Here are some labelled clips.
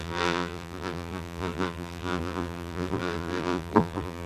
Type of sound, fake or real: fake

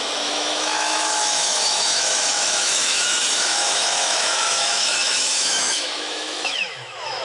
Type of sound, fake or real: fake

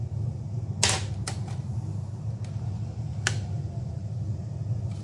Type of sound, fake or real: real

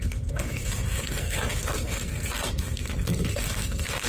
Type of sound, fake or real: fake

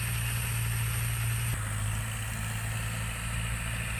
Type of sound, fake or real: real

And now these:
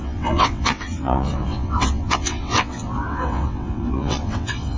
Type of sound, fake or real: fake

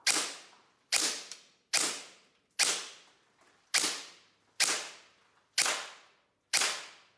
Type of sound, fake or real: real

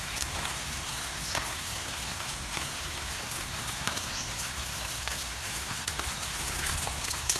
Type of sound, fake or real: fake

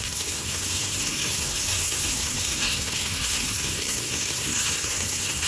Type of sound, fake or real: fake